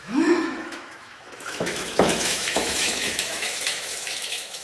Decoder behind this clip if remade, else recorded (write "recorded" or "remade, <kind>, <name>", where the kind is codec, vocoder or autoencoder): remade, autoencoder, DAC-VAE